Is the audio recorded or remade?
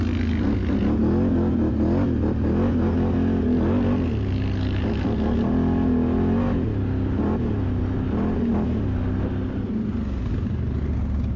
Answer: recorded